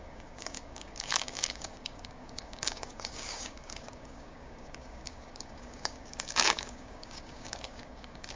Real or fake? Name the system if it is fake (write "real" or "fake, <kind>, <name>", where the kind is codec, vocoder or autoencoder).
fake, codec, DAC